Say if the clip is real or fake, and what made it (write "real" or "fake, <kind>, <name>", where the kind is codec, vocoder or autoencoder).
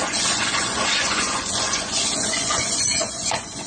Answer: fake, vocoder, Vocos